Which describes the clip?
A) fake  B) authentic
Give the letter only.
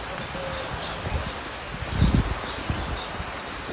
B